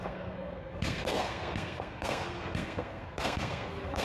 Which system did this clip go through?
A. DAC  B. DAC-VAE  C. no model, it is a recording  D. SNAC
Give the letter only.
D